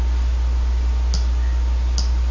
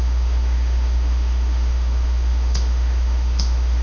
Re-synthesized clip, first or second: second